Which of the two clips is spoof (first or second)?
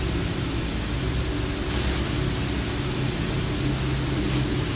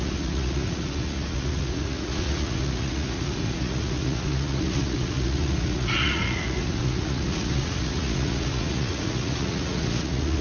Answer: second